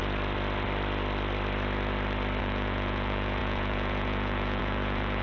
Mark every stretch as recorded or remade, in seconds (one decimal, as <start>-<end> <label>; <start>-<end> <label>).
0.0-2.4 recorded; 2.4-5.2 remade